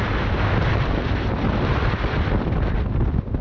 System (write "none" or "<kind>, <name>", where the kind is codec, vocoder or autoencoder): vocoder, BigVGAN v2